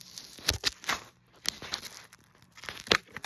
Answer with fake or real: real